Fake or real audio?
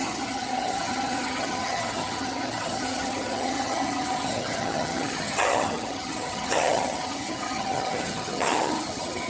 fake